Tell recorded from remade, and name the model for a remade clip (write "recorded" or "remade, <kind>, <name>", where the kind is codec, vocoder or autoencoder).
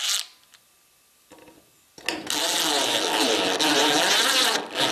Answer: recorded